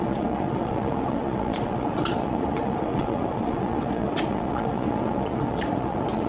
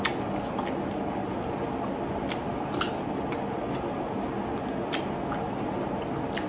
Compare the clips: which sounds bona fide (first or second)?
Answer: second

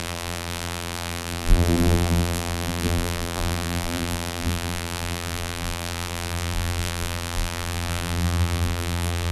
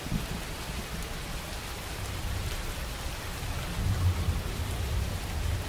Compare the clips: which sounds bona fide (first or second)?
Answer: second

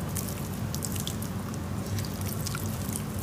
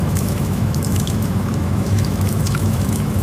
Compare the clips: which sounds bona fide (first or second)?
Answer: first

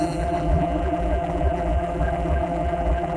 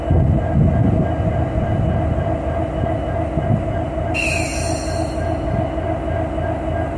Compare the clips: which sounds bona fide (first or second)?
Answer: second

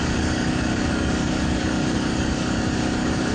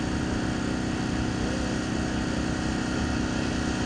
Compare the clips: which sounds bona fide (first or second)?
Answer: second